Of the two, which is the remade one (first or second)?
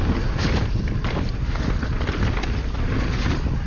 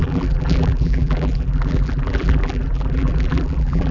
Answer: second